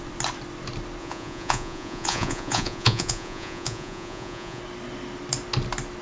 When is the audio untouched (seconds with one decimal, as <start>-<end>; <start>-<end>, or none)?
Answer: 0.0-1.0; 4.6-6.0